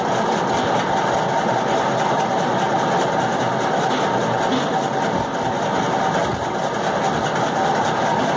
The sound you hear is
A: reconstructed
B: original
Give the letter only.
B